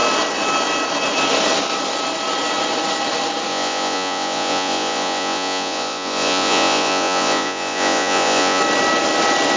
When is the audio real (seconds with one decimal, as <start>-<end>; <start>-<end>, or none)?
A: 0.0-3.5; 8.6-9.6